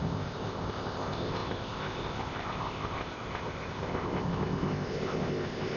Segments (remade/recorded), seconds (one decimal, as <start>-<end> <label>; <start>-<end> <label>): 0.0-5.8 remade